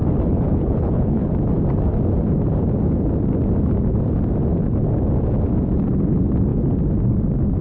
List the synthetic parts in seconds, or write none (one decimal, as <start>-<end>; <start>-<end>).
0.0-1.3

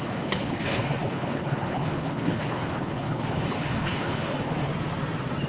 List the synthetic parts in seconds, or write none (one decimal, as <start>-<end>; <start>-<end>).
0.0-4.7